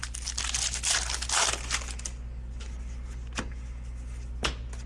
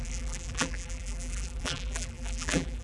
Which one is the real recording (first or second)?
first